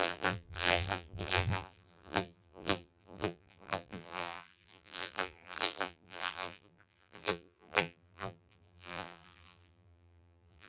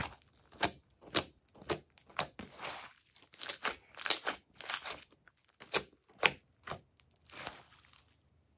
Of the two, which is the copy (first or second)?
first